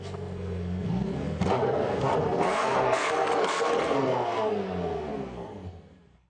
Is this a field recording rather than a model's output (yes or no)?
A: no